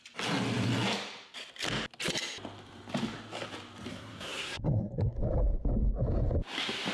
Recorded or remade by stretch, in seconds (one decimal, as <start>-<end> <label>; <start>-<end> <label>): 0.0-3.9 recorded; 3.9-5.2 remade; 5.2-6.9 recorded